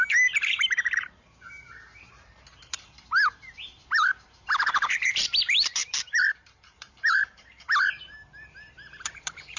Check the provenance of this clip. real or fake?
fake